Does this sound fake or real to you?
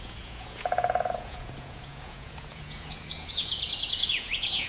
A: fake